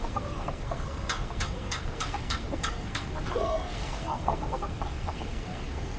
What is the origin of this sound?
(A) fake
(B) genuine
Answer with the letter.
A